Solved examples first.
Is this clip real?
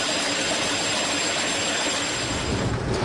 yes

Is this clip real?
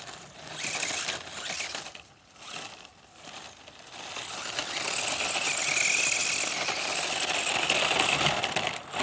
yes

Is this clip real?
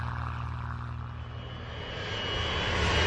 yes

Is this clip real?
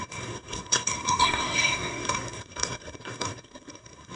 no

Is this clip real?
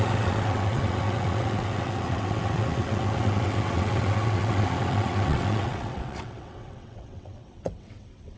no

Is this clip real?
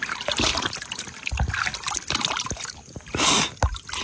yes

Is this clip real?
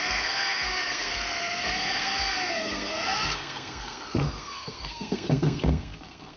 no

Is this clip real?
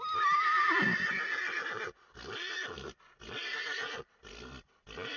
yes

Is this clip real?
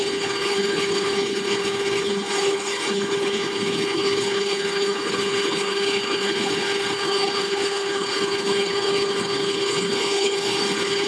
no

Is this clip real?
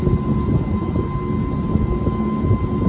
yes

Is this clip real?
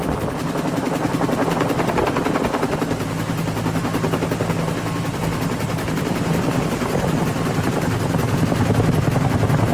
yes